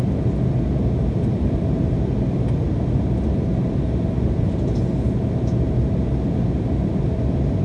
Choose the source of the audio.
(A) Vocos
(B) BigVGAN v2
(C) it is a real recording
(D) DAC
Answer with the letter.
C